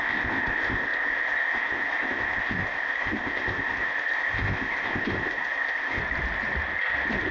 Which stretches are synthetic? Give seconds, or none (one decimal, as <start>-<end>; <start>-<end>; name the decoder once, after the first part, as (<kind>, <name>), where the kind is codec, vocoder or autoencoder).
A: 0.0-6.0 (codec, ZipCodec)